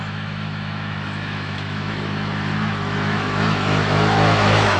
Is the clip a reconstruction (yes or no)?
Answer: yes